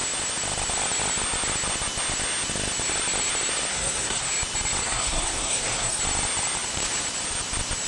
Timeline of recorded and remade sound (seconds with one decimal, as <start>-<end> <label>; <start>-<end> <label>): 0.0-3.7 recorded; 3.7-4.3 remade; 4.3-4.8 recorded; 4.8-6.0 remade; 6.0-7.9 recorded